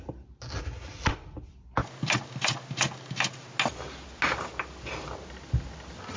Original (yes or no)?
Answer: yes